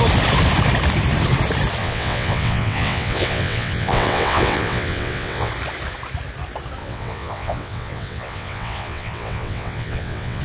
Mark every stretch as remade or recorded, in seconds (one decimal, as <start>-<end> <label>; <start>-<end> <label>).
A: 0.0-1.8 recorded; 1.8-5.5 remade; 5.5-6.8 recorded; 6.8-10.4 remade